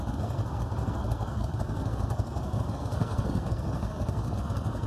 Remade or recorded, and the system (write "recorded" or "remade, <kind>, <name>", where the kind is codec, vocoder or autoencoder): remade, codec, SNAC